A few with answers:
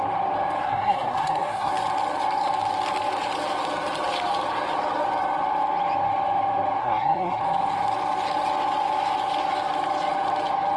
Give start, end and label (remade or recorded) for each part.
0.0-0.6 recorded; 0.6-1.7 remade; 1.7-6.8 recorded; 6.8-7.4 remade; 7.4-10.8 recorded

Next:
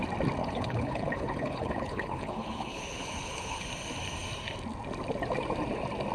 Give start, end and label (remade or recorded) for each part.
0.0-0.4 recorded; 0.4-3.7 remade; 3.7-6.1 recorded

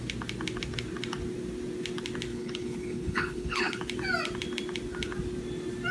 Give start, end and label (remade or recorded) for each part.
0.0-2.3 recorded; 2.3-3.8 remade; 3.8-5.9 recorded